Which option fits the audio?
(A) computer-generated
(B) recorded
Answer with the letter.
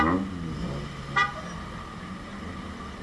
B